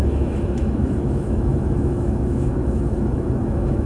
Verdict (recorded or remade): remade